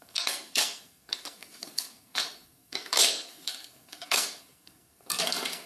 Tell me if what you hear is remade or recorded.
remade